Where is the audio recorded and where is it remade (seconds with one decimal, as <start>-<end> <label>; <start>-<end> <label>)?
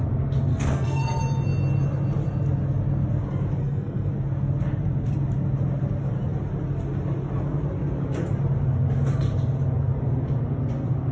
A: 0.0-0.5 recorded; 0.5-1.2 remade; 1.2-3.6 recorded; 3.6-4.1 remade; 4.1-11.1 recorded